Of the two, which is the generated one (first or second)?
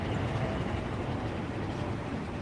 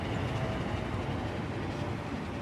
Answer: first